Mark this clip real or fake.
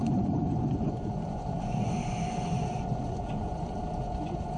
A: fake